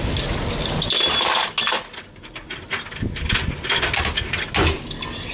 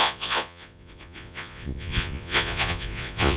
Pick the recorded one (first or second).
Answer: first